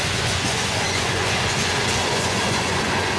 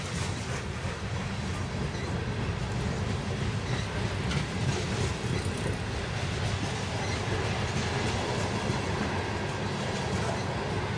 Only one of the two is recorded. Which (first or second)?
second